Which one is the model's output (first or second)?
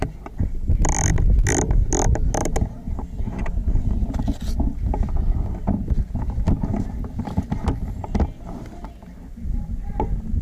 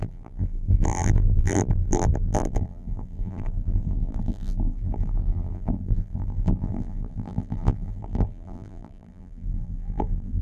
second